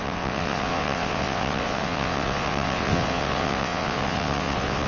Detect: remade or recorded remade